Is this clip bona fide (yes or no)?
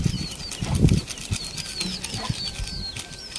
yes